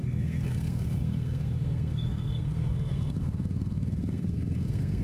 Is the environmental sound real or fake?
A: fake